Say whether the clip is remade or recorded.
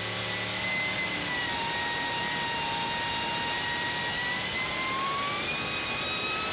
recorded